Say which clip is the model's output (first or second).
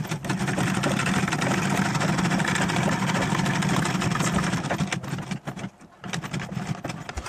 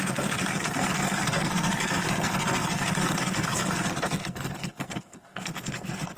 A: second